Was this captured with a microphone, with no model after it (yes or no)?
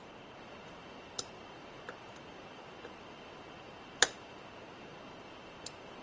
no